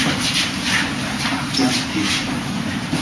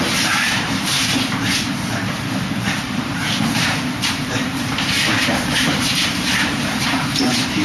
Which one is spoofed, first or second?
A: second